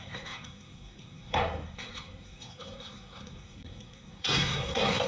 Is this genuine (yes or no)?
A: no